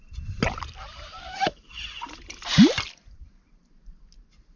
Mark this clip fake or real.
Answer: real